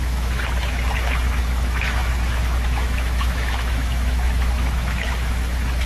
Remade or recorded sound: remade